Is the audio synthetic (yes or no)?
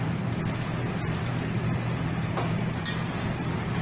no